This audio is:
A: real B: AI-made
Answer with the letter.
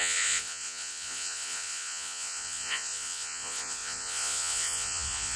B